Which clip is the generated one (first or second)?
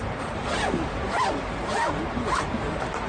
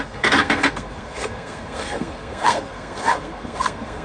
second